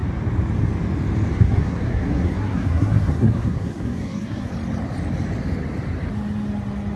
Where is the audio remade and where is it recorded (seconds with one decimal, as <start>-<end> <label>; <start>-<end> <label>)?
0.0-1.3 recorded; 1.3-4.5 remade; 4.5-7.0 recorded